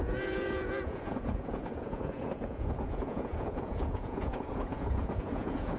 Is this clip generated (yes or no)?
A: yes